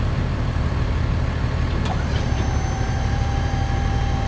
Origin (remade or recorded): remade